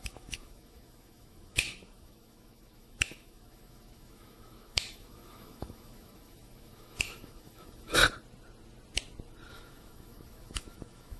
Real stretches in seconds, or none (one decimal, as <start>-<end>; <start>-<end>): 8.0-9.5